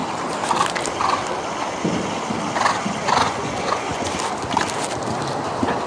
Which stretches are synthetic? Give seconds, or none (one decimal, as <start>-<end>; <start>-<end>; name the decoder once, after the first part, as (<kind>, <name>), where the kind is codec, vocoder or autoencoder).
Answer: 3.2-4.1 (vocoder, Vocos)